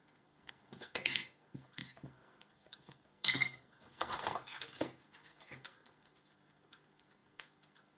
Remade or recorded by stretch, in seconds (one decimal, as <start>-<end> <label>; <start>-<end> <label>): 0.0-8.0 remade